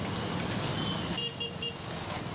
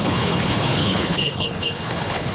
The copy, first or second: second